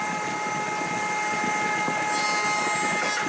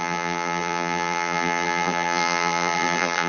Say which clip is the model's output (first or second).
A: second